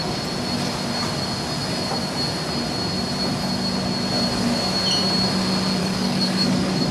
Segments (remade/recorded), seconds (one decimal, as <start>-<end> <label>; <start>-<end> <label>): 0.0-5.8 recorded; 5.8-6.9 remade